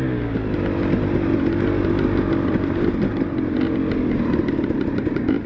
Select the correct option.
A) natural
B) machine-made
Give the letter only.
A